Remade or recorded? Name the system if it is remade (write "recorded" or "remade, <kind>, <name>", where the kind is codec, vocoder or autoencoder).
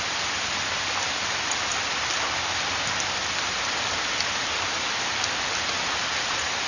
recorded